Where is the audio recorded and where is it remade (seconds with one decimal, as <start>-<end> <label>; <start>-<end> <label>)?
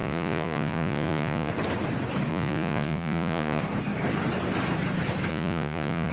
0.0-1.5 remade; 1.5-2.3 recorded; 2.3-3.6 remade; 3.6-5.3 recorded; 5.3-6.1 remade